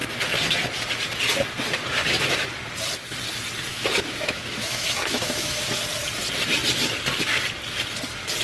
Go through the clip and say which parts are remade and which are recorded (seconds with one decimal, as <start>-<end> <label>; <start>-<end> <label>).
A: 0.0-3.7 recorded; 3.7-5.8 remade; 5.8-8.4 recorded